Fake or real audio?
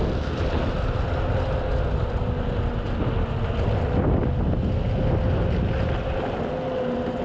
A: real